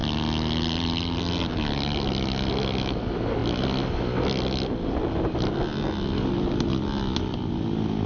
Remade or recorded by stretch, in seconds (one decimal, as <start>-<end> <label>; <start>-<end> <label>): 0.0-8.1 recorded